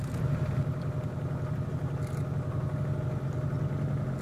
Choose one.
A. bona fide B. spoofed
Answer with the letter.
A